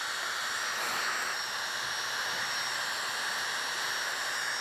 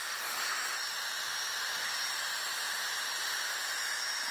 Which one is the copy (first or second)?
second